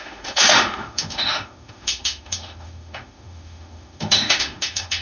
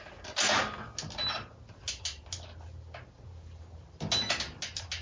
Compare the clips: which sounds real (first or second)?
second